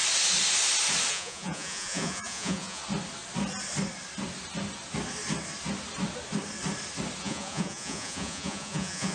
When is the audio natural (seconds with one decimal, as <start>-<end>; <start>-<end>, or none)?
0.0-1.1; 2.8-7.2